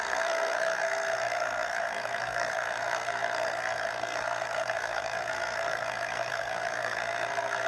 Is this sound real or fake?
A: fake